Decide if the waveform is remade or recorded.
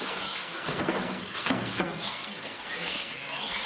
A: remade